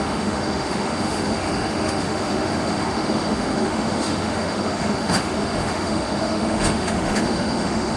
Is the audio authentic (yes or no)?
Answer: no